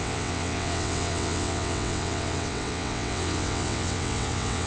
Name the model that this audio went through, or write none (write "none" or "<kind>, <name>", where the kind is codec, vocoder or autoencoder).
vocoder, WaveNeXt